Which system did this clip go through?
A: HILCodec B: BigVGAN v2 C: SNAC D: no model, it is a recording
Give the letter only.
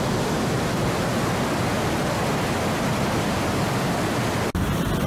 D